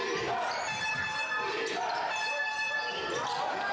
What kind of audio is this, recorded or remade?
recorded